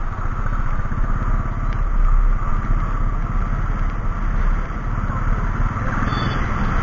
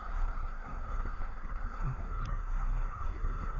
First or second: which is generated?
second